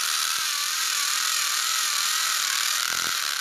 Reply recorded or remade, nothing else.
remade